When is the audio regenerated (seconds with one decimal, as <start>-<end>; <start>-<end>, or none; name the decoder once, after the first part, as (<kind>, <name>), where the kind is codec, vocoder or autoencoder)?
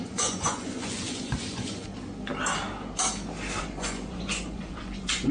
0.0-1.9 (vocoder, Vocos); 3.6-5.3